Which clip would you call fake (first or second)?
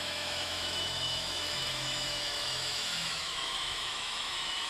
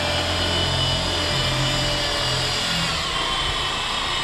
first